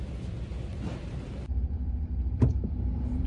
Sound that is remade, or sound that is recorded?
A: recorded